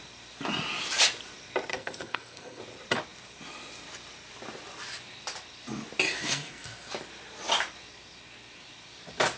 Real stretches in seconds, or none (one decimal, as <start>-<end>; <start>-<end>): 0.0-1.7; 2.6-6.1; 6.9-9.4